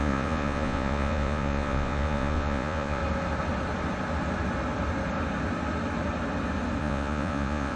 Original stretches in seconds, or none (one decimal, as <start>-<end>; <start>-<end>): 3.0-6.8